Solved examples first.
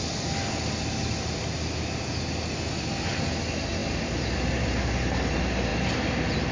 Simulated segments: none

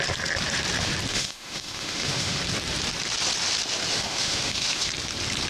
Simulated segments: 1.1-2.4; 3.9-4.9

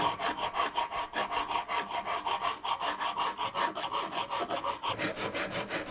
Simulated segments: 0.0-1.2; 4.7-5.9

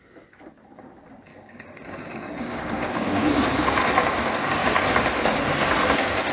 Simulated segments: 1.3-3.4

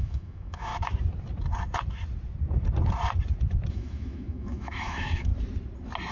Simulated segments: 0.0-0.7; 3.7-5.3

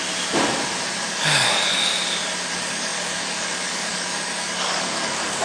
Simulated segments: 1.1-1.9; 2.5-5.4

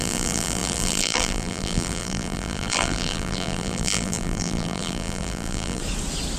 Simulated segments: 0.0-5.8